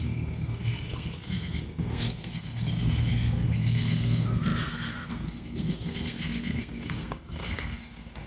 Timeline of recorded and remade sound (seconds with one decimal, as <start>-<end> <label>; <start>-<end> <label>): 0.0-8.3 remade